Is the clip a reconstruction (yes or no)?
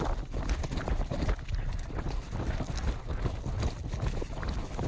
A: no